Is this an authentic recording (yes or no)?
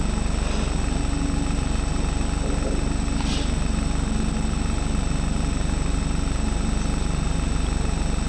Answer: yes